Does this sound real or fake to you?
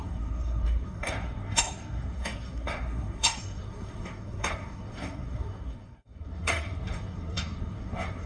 fake